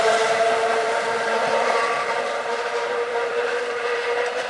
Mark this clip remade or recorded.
remade